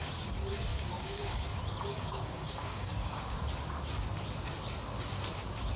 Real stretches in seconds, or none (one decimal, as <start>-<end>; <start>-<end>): 0.0-0.7; 1.4-1.9; 3.4-5.8